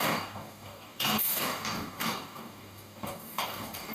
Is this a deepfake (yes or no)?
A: yes